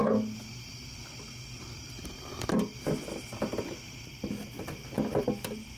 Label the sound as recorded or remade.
recorded